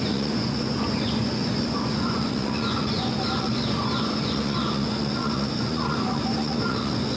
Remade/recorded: remade